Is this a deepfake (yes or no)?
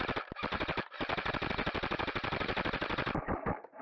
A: no